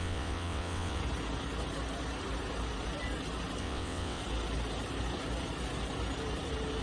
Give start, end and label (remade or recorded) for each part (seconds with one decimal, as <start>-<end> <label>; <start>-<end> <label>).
0.0-1.0 remade; 1.0-3.6 recorded; 3.6-4.2 remade; 4.2-6.8 recorded